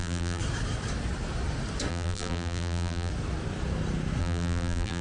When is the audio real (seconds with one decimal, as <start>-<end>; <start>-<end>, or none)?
0.4-1.9; 3.1-4.2